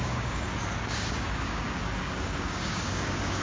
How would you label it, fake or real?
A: fake